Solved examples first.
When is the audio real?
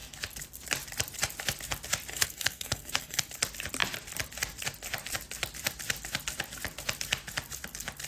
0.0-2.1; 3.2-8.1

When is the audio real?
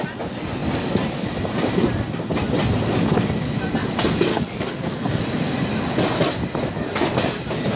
0.0-4.3; 5.2-7.8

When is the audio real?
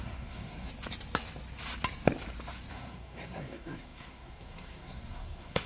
0.7-2.7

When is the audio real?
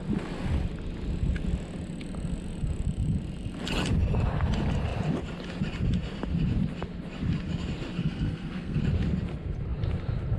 0.0-8.0; 8.8-10.4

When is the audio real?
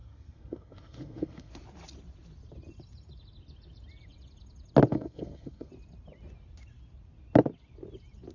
1.5-4.9; 5.7-8.3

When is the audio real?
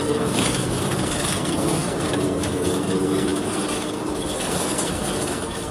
none